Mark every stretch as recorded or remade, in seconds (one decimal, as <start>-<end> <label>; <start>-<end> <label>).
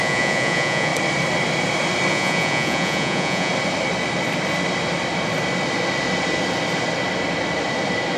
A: 0.0-0.9 remade; 0.9-2.1 recorded; 2.1-3.5 remade; 3.5-8.2 recorded